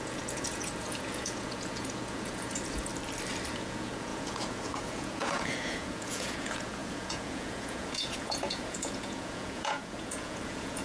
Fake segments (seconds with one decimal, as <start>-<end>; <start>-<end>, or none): 0.0-2.9; 3.5-10.8